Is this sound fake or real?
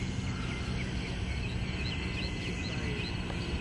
real